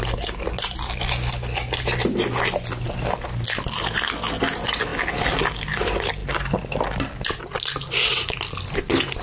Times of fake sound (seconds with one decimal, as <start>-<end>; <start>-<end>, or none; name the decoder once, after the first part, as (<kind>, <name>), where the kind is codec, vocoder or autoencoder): none